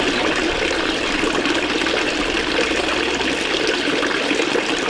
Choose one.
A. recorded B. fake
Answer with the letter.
A